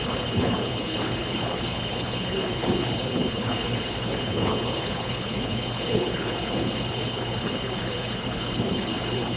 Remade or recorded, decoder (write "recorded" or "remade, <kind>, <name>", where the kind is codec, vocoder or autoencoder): remade, codec, HILCodec